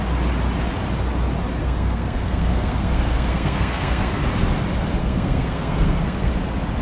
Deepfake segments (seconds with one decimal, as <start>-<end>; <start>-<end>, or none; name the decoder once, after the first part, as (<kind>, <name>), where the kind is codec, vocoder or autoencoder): 1.6-4.2 (codec, SNAC); 5.0-6.3